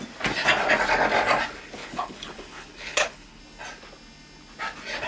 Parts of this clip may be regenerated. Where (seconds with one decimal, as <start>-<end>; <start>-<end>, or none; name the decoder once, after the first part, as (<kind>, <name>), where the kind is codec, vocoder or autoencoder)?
1.8-3.4 (codec, HILCodec)